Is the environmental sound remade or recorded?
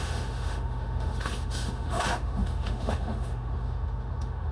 remade